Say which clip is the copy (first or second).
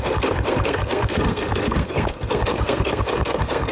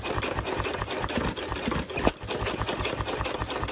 first